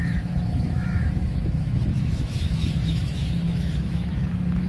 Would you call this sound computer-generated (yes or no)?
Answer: yes